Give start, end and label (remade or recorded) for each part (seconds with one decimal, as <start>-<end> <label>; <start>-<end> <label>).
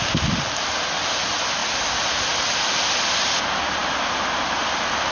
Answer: 0.0-5.1 recorded